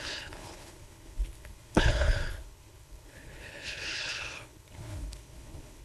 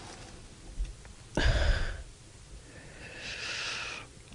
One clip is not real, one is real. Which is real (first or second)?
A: second